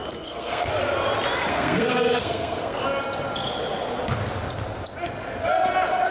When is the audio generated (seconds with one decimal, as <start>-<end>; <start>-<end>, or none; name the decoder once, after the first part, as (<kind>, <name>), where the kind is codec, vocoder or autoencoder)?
0.0-0.7 (codec, SNAC); 1.5-2.8